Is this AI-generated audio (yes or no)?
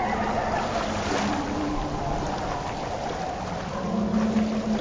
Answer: no